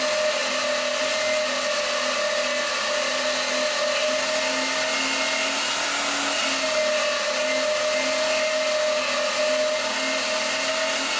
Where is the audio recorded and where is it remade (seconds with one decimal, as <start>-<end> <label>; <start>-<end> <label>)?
0.0-11.2 recorded